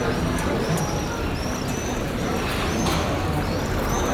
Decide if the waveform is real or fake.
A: real